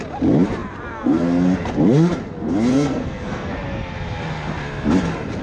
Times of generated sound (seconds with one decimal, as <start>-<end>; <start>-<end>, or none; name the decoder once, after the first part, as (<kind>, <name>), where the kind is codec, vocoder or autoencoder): 2.7-3.5 (codec, SNAC)